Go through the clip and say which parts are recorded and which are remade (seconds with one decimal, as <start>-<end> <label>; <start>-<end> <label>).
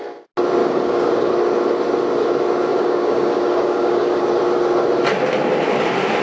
0.0-0.6 recorded; 0.6-1.3 remade; 1.3-2.7 recorded; 2.7-4.2 remade; 4.2-6.2 recorded